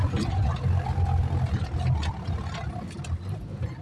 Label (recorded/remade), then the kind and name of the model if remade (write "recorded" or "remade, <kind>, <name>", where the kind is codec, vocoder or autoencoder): recorded